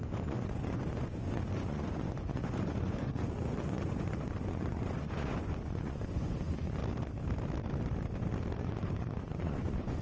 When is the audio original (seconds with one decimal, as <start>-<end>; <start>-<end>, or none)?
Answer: 6.8-8.6